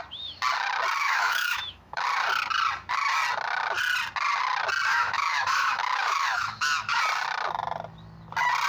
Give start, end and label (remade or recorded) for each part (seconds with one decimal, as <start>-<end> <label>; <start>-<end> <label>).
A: 0.0-1.0 recorded; 1.0-2.0 remade; 2.0-4.9 recorded; 4.9-7.0 remade; 7.0-8.7 recorded